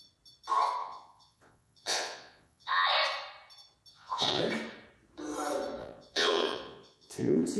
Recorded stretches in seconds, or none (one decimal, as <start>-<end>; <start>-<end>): 0.0-0.8; 2.9-3.9; 4.4-5.8